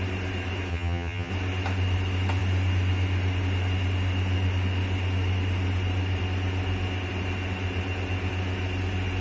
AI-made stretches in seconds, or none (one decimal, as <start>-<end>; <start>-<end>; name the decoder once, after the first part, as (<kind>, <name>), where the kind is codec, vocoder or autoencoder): 0.7-1.3 (vocoder, HiFi-GAN)

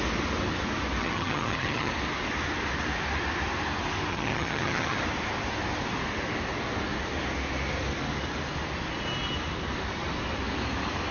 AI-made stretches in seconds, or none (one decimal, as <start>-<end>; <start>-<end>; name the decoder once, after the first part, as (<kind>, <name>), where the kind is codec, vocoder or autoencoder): 1.0-1.9 (vocoder, HiFi-GAN); 4.1-5.0

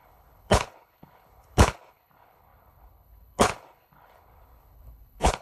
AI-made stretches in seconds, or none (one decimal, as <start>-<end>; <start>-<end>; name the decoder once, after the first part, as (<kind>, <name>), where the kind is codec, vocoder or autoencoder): 0.0-5.4 (codec, HILCodec)